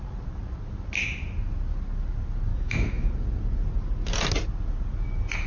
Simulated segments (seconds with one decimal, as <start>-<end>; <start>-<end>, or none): 2.5-3.1